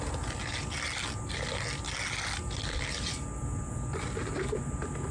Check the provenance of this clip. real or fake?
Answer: real